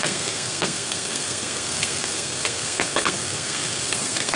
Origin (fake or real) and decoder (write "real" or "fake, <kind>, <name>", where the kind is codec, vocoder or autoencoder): fake, codec, SNAC